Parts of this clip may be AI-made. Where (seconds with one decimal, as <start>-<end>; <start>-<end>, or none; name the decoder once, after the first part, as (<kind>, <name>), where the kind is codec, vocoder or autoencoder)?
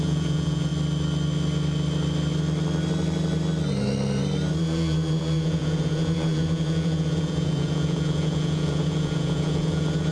0.0-0.7 (vocoder, Vocos); 4.6-10.1